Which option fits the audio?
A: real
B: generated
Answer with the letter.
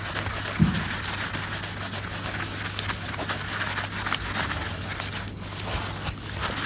A